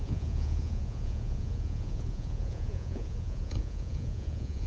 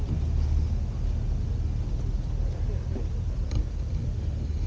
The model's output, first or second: first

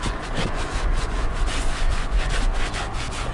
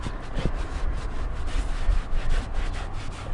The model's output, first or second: first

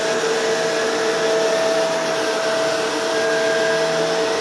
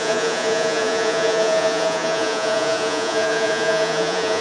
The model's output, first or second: second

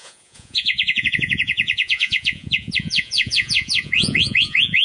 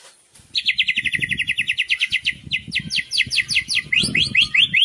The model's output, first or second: first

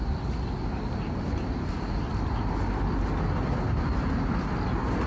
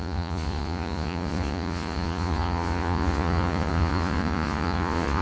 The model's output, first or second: second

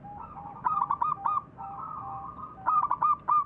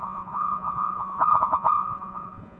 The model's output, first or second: second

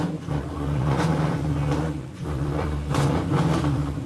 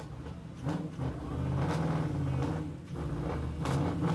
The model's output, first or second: first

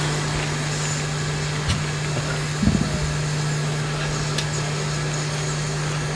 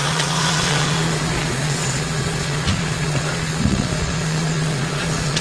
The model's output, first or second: second